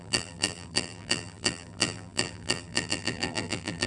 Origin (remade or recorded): remade